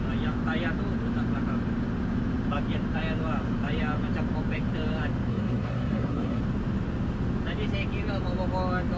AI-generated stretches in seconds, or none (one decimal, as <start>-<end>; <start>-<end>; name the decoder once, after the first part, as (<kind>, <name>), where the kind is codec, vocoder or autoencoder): 5.3-6.4 (codec, SNAC)